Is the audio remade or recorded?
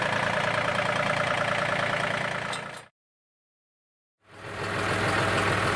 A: recorded